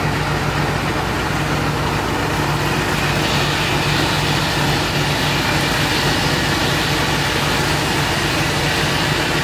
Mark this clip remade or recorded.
recorded